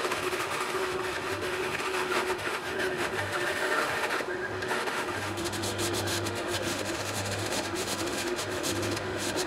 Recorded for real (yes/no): no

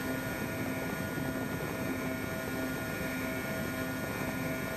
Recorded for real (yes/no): yes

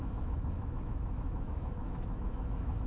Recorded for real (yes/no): no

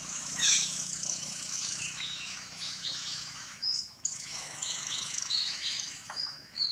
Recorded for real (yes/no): no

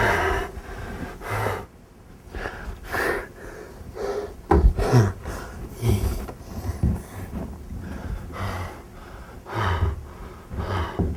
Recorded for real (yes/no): yes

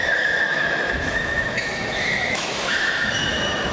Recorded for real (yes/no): no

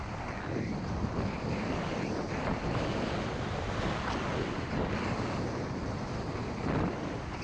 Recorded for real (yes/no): yes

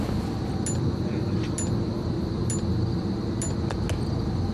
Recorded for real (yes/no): yes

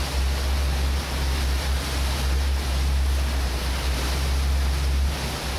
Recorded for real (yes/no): yes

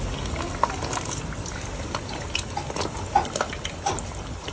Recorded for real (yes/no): yes